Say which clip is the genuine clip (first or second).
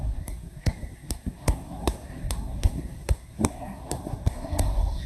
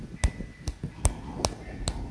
second